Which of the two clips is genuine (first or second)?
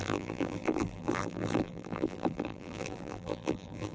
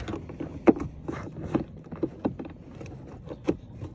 second